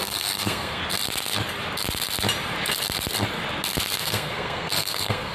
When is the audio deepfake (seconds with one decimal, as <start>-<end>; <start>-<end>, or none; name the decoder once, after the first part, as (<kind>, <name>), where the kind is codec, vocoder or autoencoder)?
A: 0.0-0.8 (codec, SNAC); 4.0-5.3